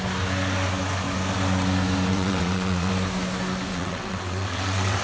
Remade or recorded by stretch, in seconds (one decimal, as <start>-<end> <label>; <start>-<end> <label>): 0.0-2.1 recorded; 2.1-2.9 remade; 2.9-3.7 recorded; 3.7-5.0 remade

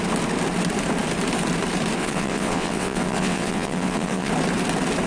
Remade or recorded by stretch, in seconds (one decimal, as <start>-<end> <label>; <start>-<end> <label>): 0.0-2.0 recorded; 2.0-4.3 remade; 4.3-5.1 recorded

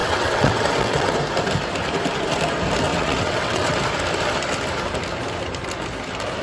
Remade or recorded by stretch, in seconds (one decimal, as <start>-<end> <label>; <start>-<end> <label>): 0.0-1.1 remade; 1.1-2.9 recorded; 2.9-3.8 remade; 3.8-6.4 recorded

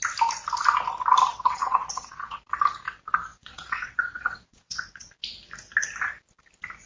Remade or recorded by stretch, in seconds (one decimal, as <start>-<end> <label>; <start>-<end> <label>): 0.0-1.3 recorded; 1.3-2.4 remade; 2.4-3.3 recorded; 3.3-5.1 remade; 5.1-6.9 recorded

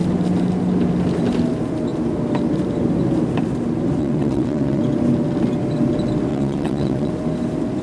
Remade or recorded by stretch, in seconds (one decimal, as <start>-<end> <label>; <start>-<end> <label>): 0.0-4.0 recorded; 4.0-4.8 remade; 4.8-6.3 recorded; 6.3-7.1 remade; 7.1-7.8 recorded

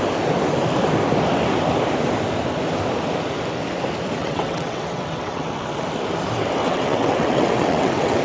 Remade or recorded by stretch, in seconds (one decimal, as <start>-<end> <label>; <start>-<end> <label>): 0.0-4.2 recorded; 4.2-5.8 remade; 5.8-6.6 recorded; 6.6-8.2 remade

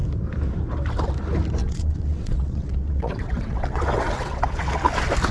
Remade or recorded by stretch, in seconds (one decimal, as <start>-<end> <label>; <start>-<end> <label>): 0.0-1.6 recorded; 1.6-4.8 remade; 4.8-5.3 recorded

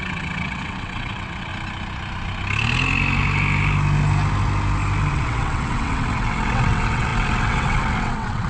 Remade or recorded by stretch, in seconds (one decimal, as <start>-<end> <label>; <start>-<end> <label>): 0.0-1.5 remade; 1.5-5.1 recorded; 5.1-8.5 remade